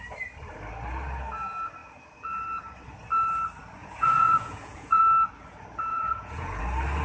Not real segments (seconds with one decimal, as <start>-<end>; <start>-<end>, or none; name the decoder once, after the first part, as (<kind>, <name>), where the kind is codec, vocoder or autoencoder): 3.8-5.0 (vocoder, Vocos); 5.9-6.6